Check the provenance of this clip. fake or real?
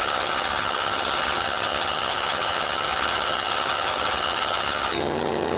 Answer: fake